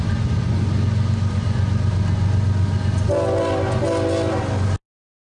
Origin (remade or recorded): recorded